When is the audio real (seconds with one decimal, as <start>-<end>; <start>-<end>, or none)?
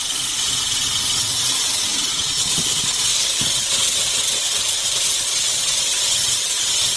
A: 2.3-5.2